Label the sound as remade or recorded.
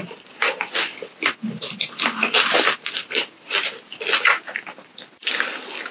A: recorded